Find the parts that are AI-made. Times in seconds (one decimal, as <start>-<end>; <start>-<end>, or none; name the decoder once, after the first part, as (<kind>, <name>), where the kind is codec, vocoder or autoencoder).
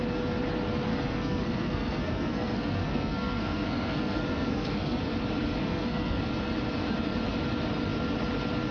0.9-5.0 (codec, SNAC); 5.6-6.2